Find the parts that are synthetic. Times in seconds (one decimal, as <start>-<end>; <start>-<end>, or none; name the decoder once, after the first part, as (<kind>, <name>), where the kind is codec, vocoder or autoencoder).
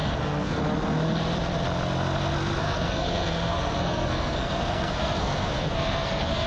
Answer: 0.0-0.6 (codec, SNAC); 2.6-6.5